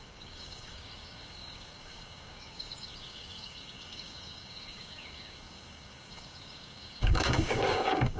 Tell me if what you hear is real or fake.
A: fake